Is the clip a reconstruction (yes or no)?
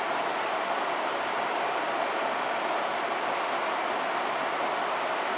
no